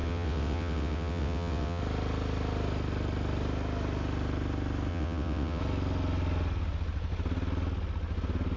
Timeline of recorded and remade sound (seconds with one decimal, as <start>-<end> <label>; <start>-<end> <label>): 0.0-1.8 remade; 1.8-4.9 recorded; 4.9-5.6 remade; 5.6-8.6 recorded